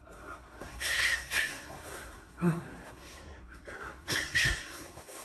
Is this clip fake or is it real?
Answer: fake